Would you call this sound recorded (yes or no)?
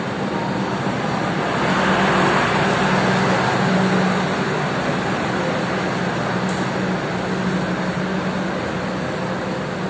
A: yes